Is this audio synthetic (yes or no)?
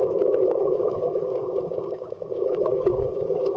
yes